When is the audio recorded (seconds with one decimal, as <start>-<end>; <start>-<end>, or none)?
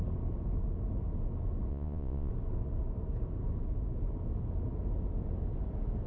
0.0-1.7; 2.3-6.1